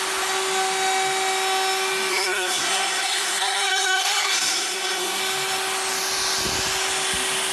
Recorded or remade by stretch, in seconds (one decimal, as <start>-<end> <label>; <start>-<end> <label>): 0.0-2.1 recorded; 2.1-5.2 remade; 5.2-7.5 recorded